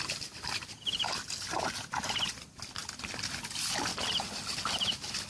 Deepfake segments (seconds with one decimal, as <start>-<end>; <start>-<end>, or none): 0.0-2.8; 3.5-3.9; 4.7-5.3